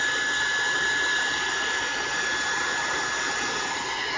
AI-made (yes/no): no